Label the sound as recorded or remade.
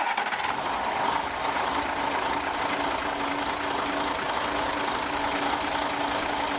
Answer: recorded